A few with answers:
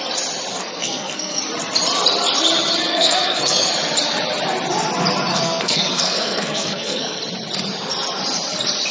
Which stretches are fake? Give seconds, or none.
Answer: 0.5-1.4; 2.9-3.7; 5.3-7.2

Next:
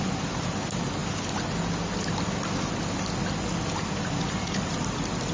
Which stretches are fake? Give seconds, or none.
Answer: none

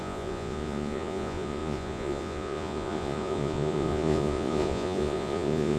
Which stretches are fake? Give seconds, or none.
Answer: 0.0-5.8

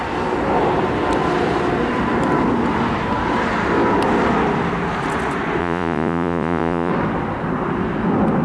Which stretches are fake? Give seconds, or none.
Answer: 5.6-6.9

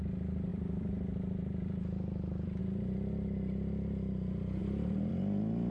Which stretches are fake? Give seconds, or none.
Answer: 0.5-2.6; 4.6-5.1

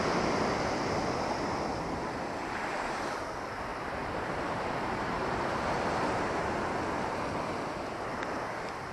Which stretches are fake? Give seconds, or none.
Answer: 3.7-7.2